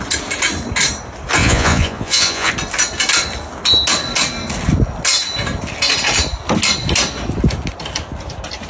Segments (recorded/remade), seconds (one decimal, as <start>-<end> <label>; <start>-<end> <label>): 0.0-1.4 recorded; 1.4-2.5 remade; 2.5-8.7 recorded